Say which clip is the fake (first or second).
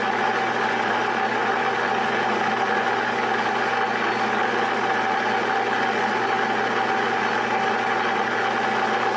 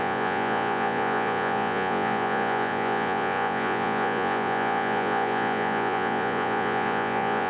second